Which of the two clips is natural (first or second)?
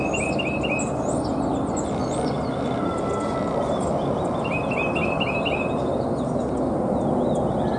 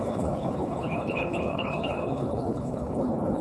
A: first